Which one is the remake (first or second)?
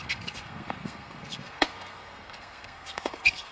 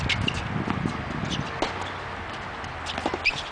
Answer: first